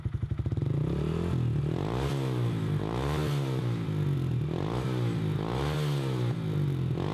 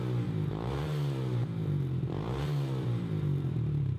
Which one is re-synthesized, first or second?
second